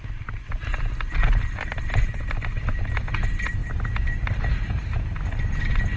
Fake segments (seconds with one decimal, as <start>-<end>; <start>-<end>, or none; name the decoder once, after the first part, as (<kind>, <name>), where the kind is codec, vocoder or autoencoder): none